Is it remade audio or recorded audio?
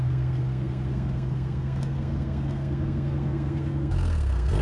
remade